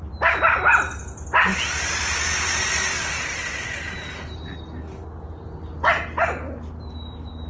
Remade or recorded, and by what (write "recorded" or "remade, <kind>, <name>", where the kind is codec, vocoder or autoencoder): recorded